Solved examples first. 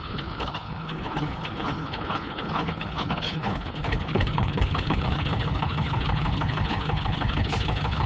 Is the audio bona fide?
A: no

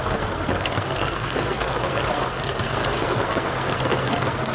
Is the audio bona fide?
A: no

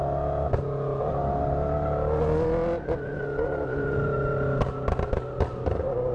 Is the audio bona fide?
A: yes